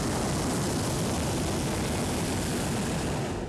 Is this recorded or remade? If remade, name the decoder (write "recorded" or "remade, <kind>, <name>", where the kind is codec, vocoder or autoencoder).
recorded